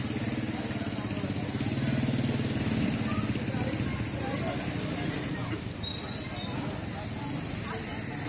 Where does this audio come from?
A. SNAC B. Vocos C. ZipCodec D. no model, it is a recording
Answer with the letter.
D